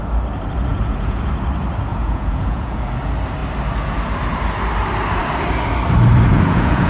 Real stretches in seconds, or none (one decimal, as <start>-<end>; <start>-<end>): 0.0-0.7; 1.3-1.9; 2.8-6.3